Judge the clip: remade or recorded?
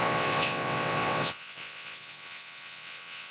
remade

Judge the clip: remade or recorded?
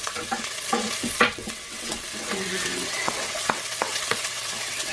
remade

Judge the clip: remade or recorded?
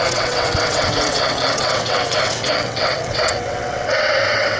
remade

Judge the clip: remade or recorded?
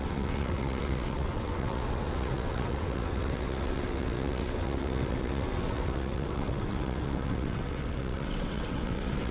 remade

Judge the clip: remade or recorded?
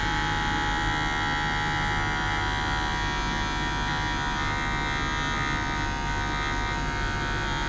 recorded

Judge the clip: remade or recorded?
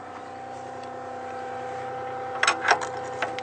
recorded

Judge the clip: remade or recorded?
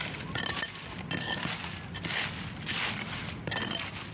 recorded